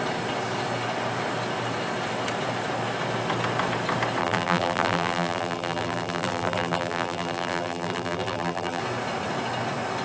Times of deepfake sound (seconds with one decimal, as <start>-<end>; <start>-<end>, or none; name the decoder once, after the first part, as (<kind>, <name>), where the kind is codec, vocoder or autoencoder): 4.2-8.8 (vocoder, BigVGAN v2)